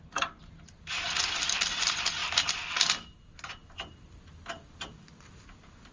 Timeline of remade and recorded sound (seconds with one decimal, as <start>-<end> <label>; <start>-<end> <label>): 0.0-5.9 recorded